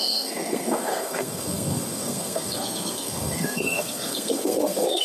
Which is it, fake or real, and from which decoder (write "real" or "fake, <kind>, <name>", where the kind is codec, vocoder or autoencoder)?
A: fake, codec, SNAC